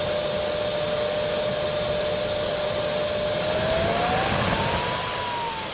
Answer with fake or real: real